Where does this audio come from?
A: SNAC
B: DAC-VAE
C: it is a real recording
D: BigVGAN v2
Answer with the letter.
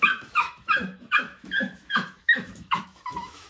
B